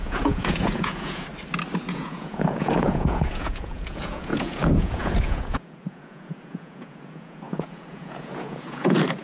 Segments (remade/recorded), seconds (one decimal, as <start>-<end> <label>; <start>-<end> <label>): 0.0-1.3 remade; 1.3-1.9 recorded; 1.9-9.2 remade